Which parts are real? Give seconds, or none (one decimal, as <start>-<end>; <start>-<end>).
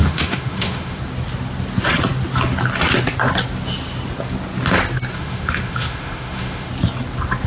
1.0-5.1; 6.7-7.5